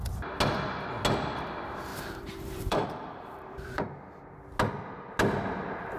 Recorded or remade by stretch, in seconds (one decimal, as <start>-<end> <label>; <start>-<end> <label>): 0.0-1.9 recorded; 1.9-3.9 remade; 3.9-6.0 recorded